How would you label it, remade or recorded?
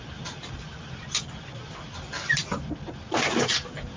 recorded